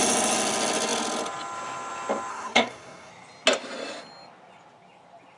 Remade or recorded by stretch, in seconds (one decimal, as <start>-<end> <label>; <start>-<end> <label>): 0.0-2.3 recorded; 2.3-3.1 remade; 3.1-5.4 recorded